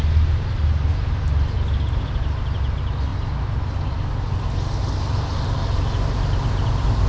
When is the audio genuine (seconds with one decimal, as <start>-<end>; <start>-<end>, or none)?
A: 0.0-7.1